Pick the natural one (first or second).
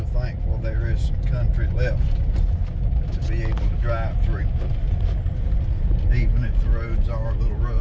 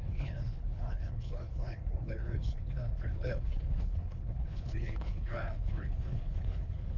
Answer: first